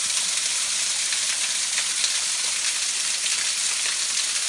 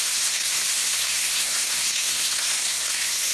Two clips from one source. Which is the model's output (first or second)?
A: second